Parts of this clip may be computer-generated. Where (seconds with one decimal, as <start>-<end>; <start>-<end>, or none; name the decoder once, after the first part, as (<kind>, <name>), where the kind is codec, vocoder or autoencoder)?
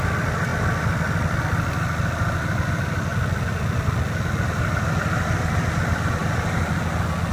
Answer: none